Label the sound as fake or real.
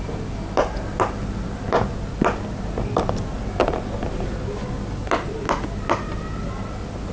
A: real